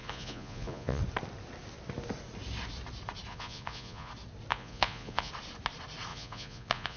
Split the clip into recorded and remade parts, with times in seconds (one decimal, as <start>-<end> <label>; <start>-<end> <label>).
0.0-1.0 remade; 1.0-3.3 recorded; 3.3-4.1 remade; 4.1-4.5 recorded; 4.5-5.3 remade; 5.3-6.1 recorded; 6.1-7.0 remade